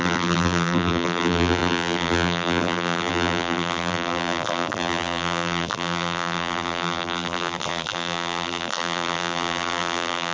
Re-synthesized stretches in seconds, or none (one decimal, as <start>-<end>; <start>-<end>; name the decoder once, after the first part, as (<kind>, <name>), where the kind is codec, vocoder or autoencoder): 0.0-10.3 (vocoder, BigVGAN v2)